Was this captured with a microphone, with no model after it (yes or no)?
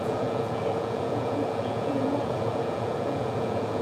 no